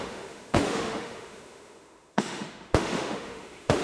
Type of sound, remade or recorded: remade